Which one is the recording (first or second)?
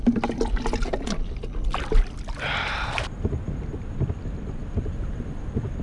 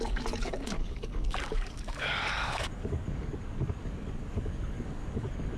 first